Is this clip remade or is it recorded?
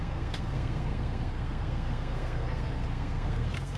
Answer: remade